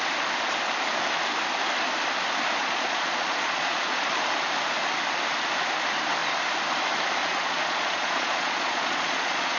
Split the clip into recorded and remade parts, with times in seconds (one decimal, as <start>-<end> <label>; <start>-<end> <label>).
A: 0.0-2.6 recorded; 2.6-4.1 remade; 4.1-7.2 recorded; 7.2-9.6 remade